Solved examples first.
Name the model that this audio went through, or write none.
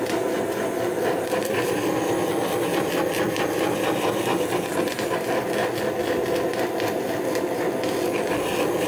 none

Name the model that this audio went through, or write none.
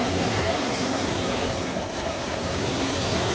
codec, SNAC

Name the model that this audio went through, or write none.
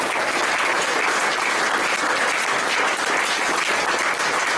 none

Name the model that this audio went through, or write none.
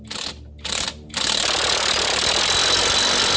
none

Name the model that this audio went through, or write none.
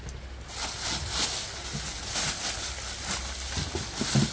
none